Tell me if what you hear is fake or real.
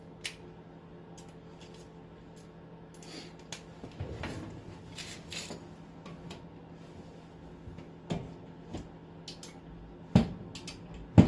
real